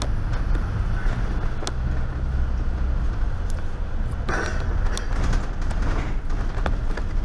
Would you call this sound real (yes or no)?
yes